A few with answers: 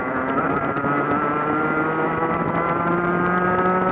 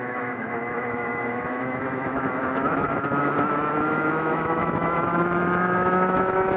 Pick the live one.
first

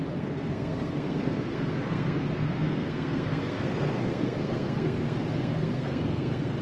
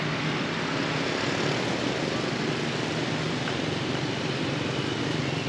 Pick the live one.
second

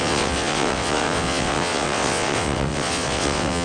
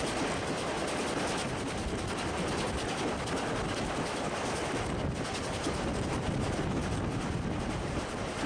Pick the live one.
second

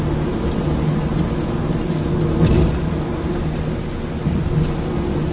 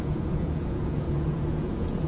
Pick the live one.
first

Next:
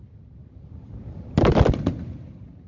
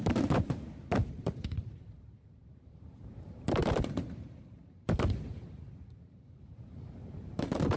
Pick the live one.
first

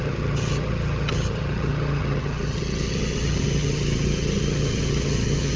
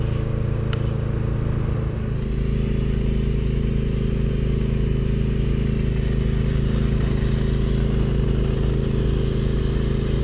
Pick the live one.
second